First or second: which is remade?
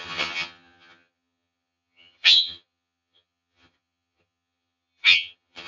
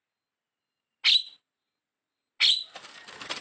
first